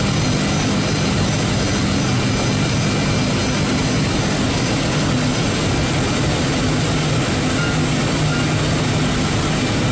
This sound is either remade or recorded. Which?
recorded